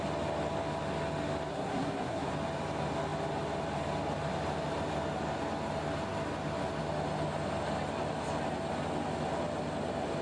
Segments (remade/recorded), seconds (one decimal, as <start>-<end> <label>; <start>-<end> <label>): 0.0-1.5 recorded; 1.5-2.3 remade; 2.3-10.2 recorded